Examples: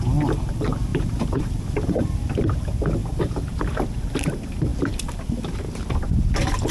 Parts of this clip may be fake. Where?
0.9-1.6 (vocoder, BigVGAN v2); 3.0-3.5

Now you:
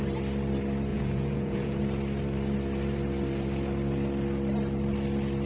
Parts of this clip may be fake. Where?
0.9-1.8 (vocoder, Vocos)

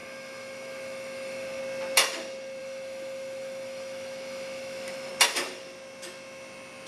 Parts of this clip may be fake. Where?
0.0-1.6 (autoencoder, DAC-VAE); 2.6-5.1

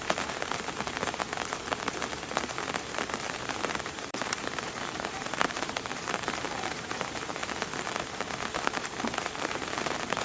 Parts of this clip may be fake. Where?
0.0-1.2 (vocoder, BigVGAN v2); 3.1-7.4; 8.5-10.2